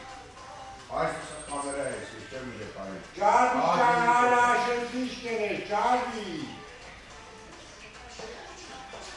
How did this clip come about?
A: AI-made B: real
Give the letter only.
B